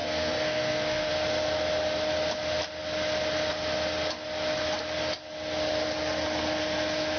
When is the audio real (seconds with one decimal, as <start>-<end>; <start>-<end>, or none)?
1.1-7.2

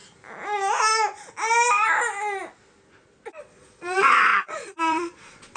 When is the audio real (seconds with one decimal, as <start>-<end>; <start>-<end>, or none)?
0.0-3.4